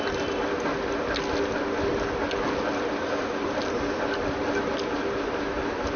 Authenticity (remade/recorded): recorded